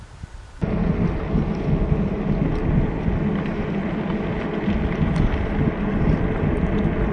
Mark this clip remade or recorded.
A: recorded